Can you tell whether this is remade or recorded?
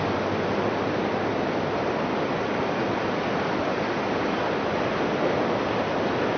recorded